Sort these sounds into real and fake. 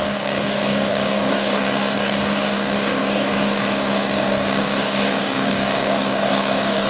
fake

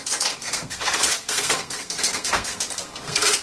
fake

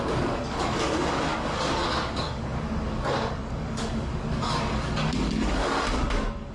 fake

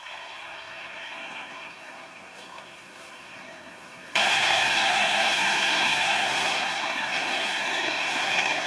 fake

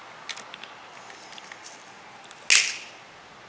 real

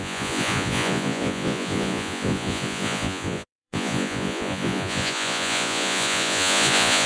fake